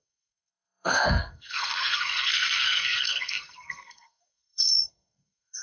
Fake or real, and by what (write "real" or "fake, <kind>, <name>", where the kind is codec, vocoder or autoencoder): fake, codec, SNAC